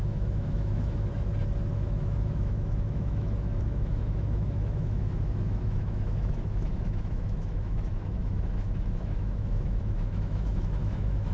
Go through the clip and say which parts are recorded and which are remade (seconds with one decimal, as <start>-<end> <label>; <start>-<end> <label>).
0.0-1.1 remade; 1.1-1.7 recorded; 1.7-11.3 remade